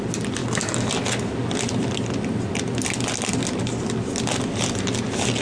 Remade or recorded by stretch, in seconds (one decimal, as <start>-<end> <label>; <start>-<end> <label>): 0.0-5.4 recorded